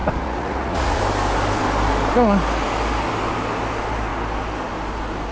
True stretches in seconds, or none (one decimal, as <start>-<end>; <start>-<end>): 1.0-5.3